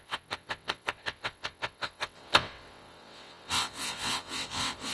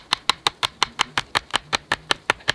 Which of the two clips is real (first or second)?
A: second